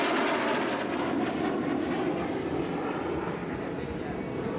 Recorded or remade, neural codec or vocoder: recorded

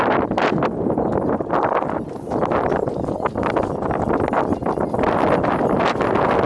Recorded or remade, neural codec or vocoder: recorded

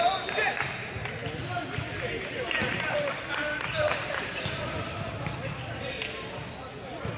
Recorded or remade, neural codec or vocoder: recorded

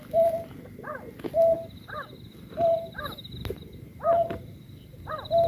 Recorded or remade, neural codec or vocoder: recorded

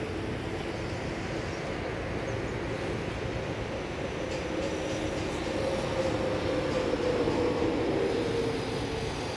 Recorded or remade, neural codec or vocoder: recorded